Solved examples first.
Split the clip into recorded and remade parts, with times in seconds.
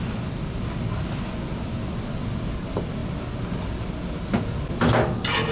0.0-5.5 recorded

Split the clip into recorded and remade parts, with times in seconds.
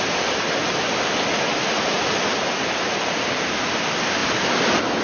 0.0-5.0 recorded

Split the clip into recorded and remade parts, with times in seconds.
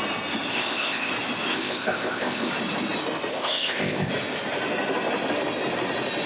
0.0-0.5 recorded; 0.5-1.1 remade; 1.1-1.5 recorded; 1.5-2.5 remade; 2.5-3.3 recorded; 3.3-4.1 remade; 4.1-6.3 recorded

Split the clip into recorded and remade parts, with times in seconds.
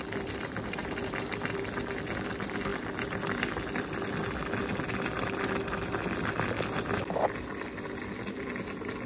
0.0-9.1 recorded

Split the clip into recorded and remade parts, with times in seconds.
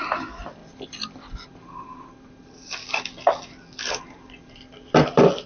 0.0-5.5 recorded